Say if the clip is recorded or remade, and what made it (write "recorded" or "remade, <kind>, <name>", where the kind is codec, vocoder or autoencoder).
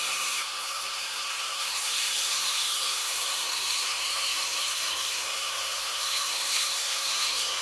remade, codec, SNAC